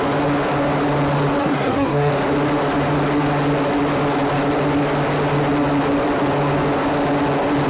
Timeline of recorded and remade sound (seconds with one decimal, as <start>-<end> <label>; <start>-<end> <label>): 0.0-1.4 recorded; 1.4-2.1 remade; 2.1-7.7 recorded